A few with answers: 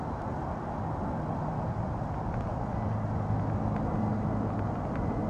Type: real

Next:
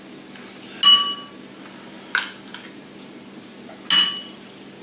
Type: real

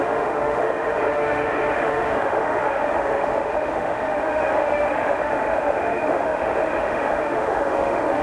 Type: fake